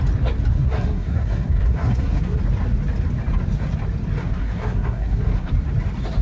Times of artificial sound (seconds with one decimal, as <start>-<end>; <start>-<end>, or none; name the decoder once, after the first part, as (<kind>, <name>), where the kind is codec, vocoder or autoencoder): 0.5-2.4 (codec, SNAC); 4.2-5.5